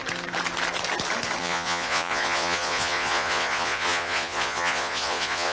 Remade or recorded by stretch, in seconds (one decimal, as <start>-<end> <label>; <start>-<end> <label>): 0.0-1.4 recorded; 1.4-5.5 remade